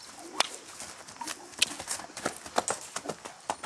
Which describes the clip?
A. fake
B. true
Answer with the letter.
B